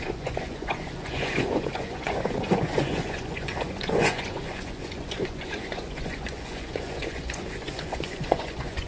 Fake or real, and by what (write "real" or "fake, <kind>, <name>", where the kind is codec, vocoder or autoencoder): fake, vocoder, Vocos